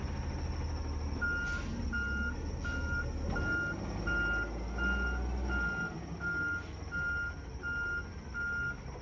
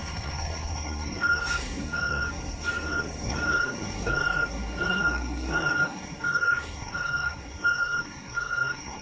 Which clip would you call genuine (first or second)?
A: first